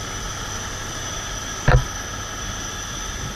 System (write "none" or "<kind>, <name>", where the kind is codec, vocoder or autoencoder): vocoder, BigVGAN v2